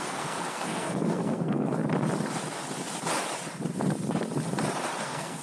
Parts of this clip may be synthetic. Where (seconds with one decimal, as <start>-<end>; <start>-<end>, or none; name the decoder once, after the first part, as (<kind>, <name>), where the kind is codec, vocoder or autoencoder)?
0.0-1.8 (codec, SNAC); 5.0-5.4